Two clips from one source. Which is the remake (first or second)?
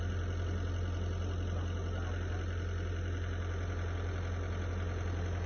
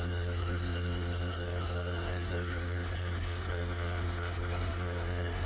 second